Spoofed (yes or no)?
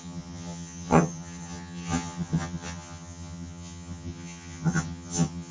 yes